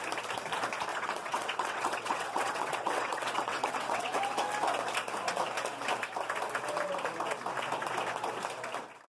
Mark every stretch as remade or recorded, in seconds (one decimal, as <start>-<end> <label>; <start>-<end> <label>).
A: 0.0-0.9 recorded; 0.9-4.2 remade; 4.2-9.1 recorded